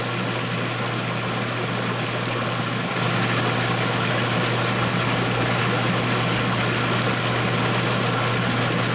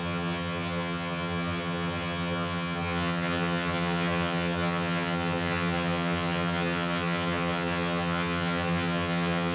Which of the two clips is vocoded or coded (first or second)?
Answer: second